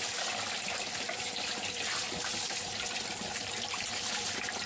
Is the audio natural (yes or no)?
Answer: yes